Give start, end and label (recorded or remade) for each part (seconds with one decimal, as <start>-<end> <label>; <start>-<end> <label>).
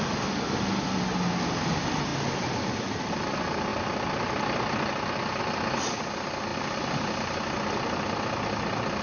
0.0-2.1 recorded; 2.1-3.1 remade; 3.1-9.0 recorded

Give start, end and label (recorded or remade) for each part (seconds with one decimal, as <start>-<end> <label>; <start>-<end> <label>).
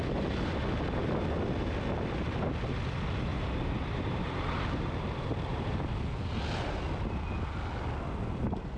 0.0-3.3 recorded; 3.3-6.0 remade; 6.0-8.8 recorded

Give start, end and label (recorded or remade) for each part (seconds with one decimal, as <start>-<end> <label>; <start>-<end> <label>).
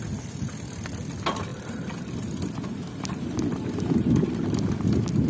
0.0-1.5 recorded; 1.5-4.6 remade; 4.6-5.3 recorded